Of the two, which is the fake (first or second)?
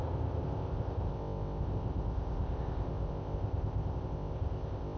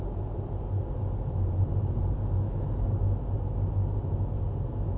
first